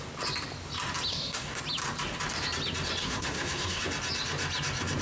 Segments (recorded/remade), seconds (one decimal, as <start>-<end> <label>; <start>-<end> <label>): 0.0-1.1 recorded; 1.1-1.6 remade; 1.6-3.0 recorded; 3.0-3.8 remade; 3.8-5.0 recorded